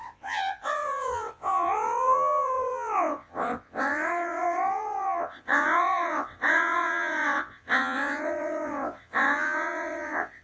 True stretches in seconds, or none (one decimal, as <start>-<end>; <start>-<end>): none